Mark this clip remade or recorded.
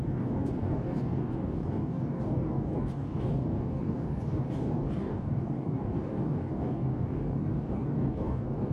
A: remade